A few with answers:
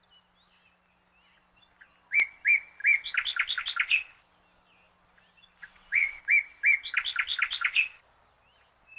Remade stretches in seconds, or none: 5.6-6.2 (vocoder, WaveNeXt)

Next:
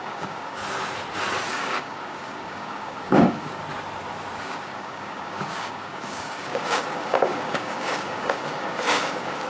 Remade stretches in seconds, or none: 0.0-0.6 (codec, DAC); 1.5-3.6; 4.4-9.5

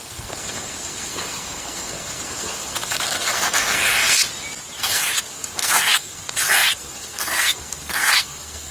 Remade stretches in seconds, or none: 0.0-4.2 (codec, SNAC); 4.8-8.7

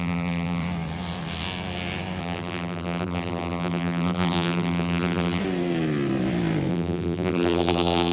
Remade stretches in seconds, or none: 0.0-0.6 (vocoder, BigVGAN v2); 2.2-5.4; 6.7-8.1

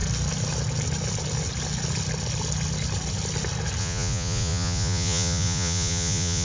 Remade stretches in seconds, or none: 3.8-6.4 (vocoder, Vocos)

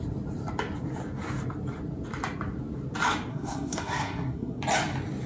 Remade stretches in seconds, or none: 3.3-4.6 (codec, SNAC)